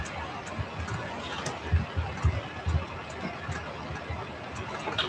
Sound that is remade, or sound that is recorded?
recorded